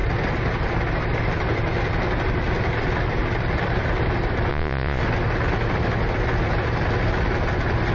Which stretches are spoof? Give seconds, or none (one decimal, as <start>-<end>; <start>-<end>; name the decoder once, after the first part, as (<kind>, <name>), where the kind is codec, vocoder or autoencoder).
4.5-5.0 (vocoder, Vocos)